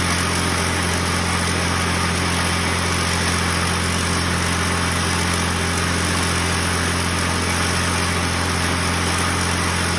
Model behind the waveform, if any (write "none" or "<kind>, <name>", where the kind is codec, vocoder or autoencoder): none